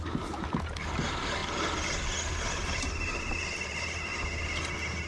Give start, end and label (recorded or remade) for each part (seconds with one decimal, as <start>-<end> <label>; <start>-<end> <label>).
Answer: 0.0-1.4 remade; 1.4-2.4 recorded; 2.4-4.1 remade; 4.1-5.1 recorded